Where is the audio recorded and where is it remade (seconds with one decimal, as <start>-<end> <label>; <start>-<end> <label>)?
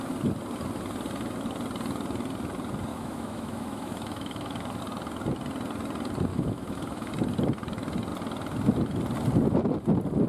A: 0.0-2.9 recorded; 2.9-4.8 remade; 4.8-6.3 recorded; 6.3-7.1 remade; 7.1-10.3 recorded